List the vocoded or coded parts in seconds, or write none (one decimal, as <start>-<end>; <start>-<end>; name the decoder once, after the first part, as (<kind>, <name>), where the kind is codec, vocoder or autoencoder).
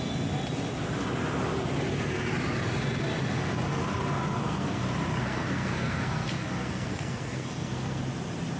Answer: 4.2-4.8 (codec, SNAC); 5.2-8.0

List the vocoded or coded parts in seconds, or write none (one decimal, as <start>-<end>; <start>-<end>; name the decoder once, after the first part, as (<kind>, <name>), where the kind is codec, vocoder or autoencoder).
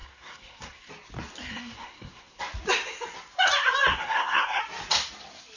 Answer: 0.0-0.9 (codec, SNAC); 1.5-2.4; 3.9-4.6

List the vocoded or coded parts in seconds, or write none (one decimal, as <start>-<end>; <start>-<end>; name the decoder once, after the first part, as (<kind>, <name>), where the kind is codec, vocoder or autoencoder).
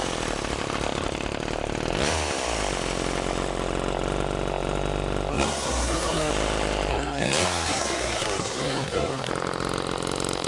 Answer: 5.3-6.3 (codec, SNAC); 6.9-9.3